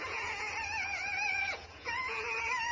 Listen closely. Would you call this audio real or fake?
fake